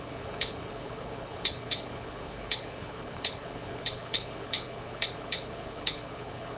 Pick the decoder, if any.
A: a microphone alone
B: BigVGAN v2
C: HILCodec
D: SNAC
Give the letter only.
C